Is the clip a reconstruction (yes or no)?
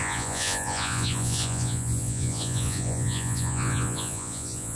yes